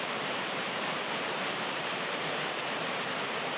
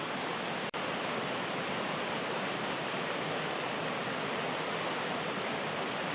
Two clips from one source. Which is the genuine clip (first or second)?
second